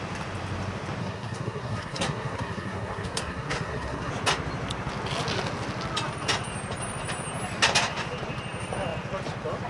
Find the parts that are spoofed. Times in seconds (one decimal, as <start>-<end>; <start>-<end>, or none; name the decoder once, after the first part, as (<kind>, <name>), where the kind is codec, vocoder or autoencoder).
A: 1.0-4.1 (codec, SNAC)